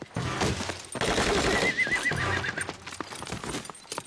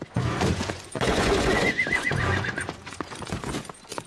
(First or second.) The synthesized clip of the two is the second